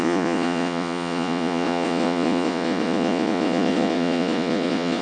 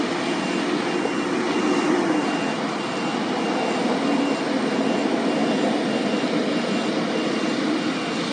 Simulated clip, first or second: first